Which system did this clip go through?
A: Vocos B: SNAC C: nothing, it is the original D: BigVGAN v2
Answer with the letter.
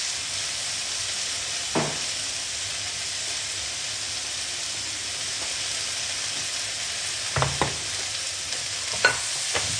C